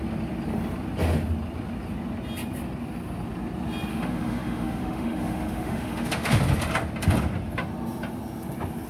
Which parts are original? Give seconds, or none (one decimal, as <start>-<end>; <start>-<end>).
0.0-3.9; 6.4-8.9